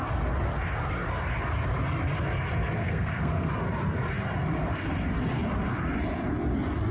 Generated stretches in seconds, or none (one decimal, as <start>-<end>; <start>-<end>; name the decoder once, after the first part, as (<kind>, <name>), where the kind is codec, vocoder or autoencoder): 2.8-3.5 (codec, SNAC)